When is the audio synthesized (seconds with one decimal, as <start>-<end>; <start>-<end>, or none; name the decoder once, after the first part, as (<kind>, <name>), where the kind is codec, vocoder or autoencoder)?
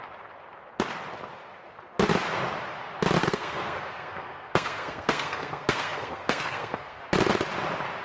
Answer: 3.2-7.0 (codec, SNAC)